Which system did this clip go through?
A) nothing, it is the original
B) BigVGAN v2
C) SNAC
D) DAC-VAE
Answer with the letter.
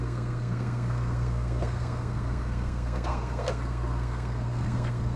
C